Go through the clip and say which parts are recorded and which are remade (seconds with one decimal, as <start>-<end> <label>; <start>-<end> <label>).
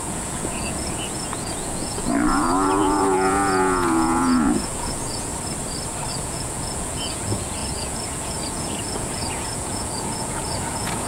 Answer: 0.0-5.3 remade; 5.3-6.1 recorded; 6.1-11.1 remade